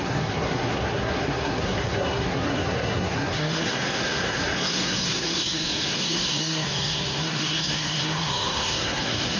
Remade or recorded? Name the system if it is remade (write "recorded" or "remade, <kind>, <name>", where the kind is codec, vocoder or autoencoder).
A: remade, codec, SNAC